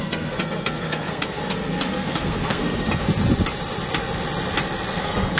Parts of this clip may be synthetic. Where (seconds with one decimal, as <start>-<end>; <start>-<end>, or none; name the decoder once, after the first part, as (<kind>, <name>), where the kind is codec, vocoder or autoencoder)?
0.0-3.0 (codec, SNAC); 5.0-5.4